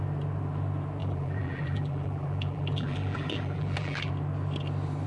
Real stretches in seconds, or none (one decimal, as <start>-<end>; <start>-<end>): 0.0-1.0; 4.1-5.1

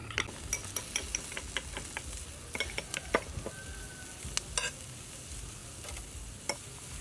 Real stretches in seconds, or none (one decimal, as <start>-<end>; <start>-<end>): 0.0-7.0

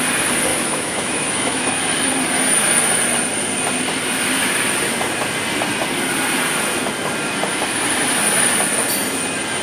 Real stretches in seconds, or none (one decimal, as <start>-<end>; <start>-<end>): 0.0-0.5; 1.6-9.6

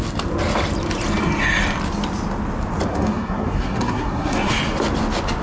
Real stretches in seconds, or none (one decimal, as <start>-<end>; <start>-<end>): 0.0-2.9; 4.5-5.4

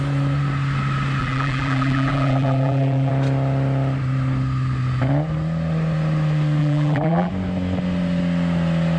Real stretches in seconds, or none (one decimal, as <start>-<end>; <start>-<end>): 0.0-1.2; 3.1-6.6; 7.3-9.0

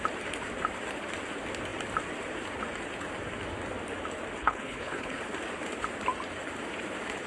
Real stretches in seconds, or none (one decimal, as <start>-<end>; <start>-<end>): 0.0-4.4; 5.2-7.3

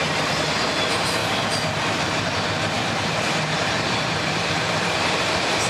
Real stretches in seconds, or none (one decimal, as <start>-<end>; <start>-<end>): 1.2-1.8

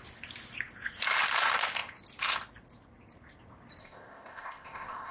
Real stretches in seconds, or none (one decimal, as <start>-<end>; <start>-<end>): 0.0-3.8